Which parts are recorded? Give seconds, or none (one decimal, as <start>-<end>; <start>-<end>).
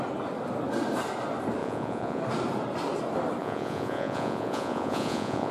0.0-1.6; 2.2-3.4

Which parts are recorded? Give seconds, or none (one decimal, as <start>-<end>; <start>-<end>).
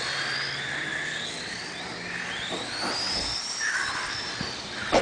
0.0-5.0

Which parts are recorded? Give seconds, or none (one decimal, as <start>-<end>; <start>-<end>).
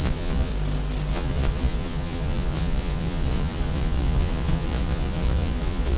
0.5-1.1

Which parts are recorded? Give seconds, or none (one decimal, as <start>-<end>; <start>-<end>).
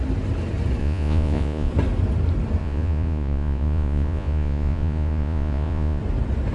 0.0-0.8; 1.7-2.6; 6.0-6.5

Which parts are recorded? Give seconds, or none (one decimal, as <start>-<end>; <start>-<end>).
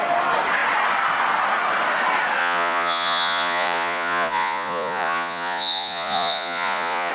0.0-2.4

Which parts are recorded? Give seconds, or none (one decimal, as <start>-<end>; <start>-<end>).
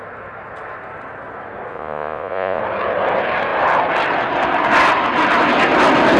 0.0-1.7; 2.6-6.2